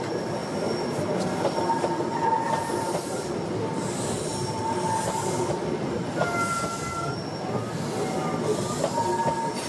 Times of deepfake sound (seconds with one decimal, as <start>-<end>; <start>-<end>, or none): none